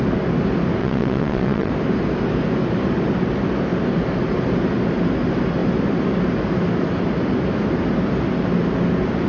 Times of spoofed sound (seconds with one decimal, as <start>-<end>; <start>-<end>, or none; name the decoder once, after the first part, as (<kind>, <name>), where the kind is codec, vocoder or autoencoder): 0.8-1.7 (vocoder, WaveNeXt)